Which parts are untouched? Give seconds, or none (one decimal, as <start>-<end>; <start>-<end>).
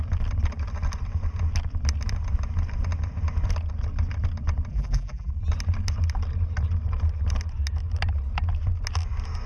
0.0-4.7; 5.3-9.5